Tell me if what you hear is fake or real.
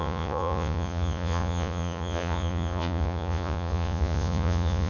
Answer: fake